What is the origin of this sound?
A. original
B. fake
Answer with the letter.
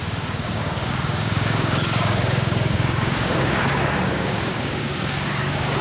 B